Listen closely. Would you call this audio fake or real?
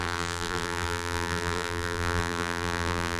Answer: fake